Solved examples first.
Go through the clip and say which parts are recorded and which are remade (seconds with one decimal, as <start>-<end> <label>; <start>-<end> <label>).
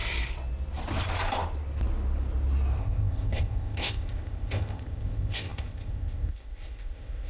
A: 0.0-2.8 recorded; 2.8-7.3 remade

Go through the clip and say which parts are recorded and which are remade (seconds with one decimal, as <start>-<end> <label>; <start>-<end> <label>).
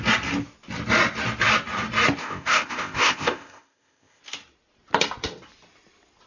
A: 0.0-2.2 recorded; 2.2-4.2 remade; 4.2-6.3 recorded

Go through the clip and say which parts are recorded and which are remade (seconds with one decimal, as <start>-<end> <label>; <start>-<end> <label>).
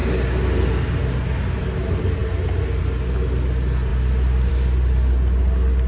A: 0.0-5.9 recorded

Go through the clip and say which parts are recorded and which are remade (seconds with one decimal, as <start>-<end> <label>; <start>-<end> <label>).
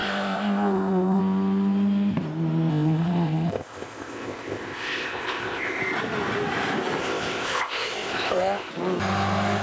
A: 0.0-1.2 remade; 1.2-2.7 recorded; 2.7-5.8 remade; 5.8-7.0 recorded; 7.0-8.7 remade; 8.7-9.6 recorded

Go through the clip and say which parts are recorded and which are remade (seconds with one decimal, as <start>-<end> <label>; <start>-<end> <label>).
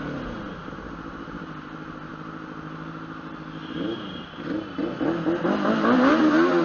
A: 0.0-6.6 recorded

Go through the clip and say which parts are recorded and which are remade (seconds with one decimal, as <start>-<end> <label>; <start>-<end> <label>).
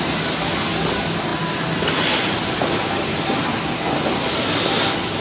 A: 0.0-5.2 recorded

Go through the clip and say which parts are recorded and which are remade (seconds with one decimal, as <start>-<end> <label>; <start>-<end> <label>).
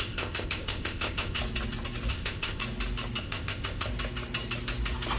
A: 0.0-1.4 remade; 1.4-2.1 recorded; 2.1-2.6 remade; 2.6-3.2 recorded; 3.2-3.9 remade; 3.9-5.2 recorded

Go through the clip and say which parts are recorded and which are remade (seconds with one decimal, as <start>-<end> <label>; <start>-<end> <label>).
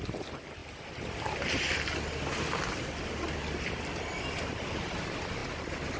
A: 0.0-6.0 recorded